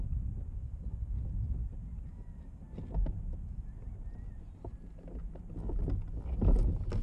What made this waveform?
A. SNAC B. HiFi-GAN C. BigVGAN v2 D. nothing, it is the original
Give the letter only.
D